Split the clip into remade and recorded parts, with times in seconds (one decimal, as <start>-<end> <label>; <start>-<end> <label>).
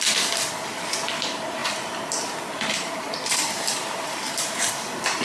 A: 0.0-5.2 remade